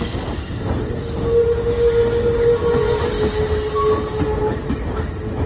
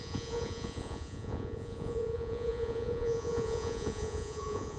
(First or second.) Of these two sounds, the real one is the first